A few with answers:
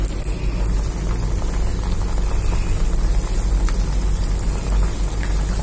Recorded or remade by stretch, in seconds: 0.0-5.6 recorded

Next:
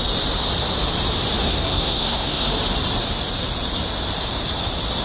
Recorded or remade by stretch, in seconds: 0.0-1.4 recorded; 1.4-2.5 remade; 2.5-5.0 recorded

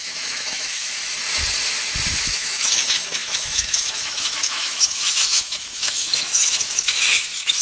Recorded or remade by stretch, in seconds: 0.0-1.0 remade; 1.0-2.2 recorded; 2.2-7.6 remade